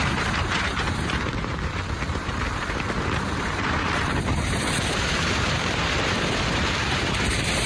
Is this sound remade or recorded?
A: remade